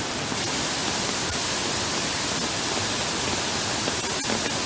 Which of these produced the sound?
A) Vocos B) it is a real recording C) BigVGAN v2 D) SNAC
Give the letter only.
B